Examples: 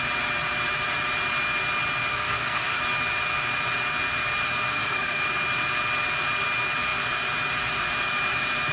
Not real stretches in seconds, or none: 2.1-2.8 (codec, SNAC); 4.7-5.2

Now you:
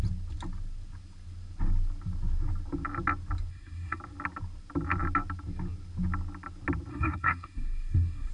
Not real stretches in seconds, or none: 3.5-4.0 (codec, SNAC); 6.9-8.3